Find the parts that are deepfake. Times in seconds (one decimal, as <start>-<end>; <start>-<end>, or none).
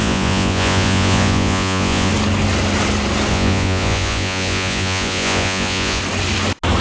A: 0.0-2.1; 3.3-6.0